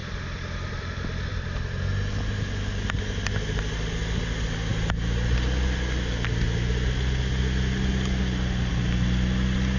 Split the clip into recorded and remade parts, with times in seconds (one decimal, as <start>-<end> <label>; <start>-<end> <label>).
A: 0.0-2.5 remade; 2.5-9.8 recorded